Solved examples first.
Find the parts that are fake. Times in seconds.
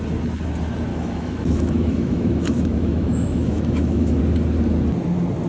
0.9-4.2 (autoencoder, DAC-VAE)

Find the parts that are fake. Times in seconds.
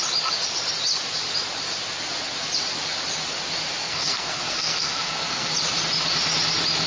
3.8-5.5 (codec, SNAC)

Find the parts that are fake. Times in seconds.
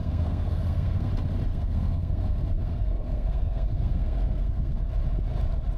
0.0-1.1 (codec, SNAC); 1.5-5.0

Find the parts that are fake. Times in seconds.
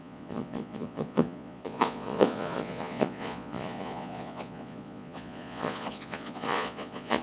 0.0-7.2 (vocoder, Vocos)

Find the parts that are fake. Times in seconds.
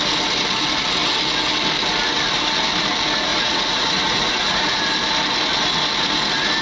3.3-4.8 (vocoder, Vocos)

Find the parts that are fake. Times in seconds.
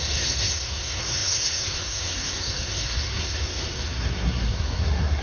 0.0-5.2 (codec, SNAC)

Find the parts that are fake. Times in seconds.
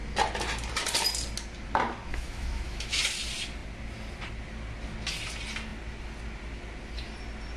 2.1-3.0 (autoencoder, DAC-VAE)